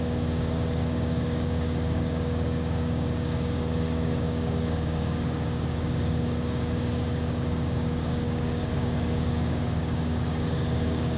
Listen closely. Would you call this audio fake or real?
fake